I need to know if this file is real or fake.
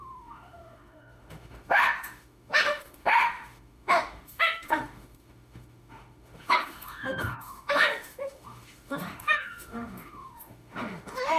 fake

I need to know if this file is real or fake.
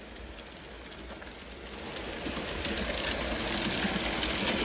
real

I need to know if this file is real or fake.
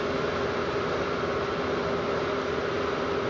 real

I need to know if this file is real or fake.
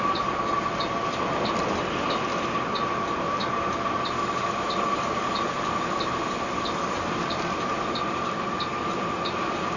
real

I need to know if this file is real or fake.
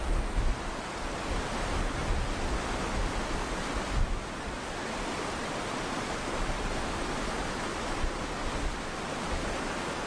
real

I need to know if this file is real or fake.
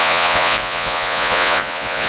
fake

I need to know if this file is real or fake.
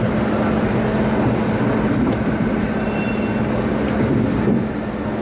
real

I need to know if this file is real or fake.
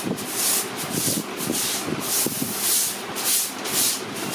real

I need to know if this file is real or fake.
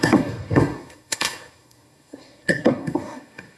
fake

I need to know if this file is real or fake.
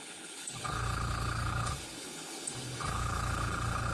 fake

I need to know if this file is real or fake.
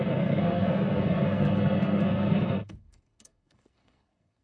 fake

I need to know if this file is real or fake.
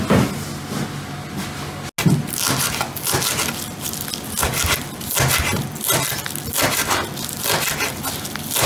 real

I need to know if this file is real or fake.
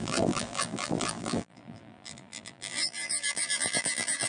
fake